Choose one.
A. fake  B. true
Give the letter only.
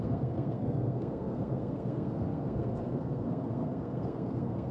A